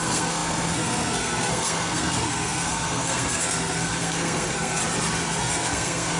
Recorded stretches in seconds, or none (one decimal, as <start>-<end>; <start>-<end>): 4.8-5.4